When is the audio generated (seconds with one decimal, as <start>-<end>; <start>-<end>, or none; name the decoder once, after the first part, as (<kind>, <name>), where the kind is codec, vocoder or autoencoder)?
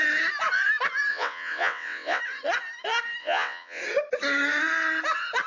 1.1-2.2 (vocoder, WaveNeXt); 3.2-3.8